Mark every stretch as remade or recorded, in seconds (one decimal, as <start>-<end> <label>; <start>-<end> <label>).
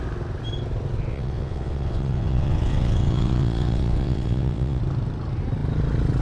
0.0-1.1 recorded; 1.1-4.8 remade; 4.8-6.2 recorded